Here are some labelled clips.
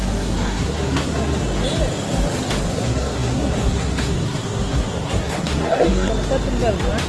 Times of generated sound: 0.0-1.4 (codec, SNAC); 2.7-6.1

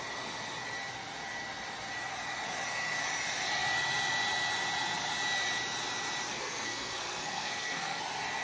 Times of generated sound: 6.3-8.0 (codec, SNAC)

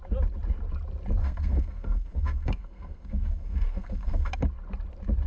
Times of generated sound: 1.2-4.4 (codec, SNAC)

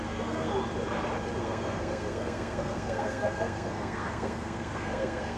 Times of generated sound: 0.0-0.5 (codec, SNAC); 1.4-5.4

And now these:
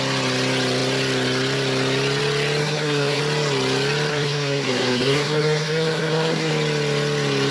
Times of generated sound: 2.6-3.2 (codec, SNAC); 4.1-6.5

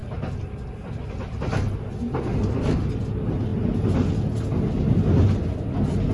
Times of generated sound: none